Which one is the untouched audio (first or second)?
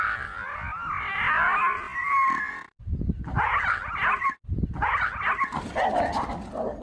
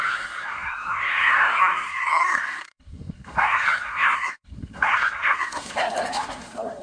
first